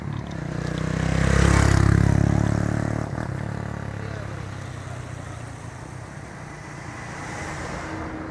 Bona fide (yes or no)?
yes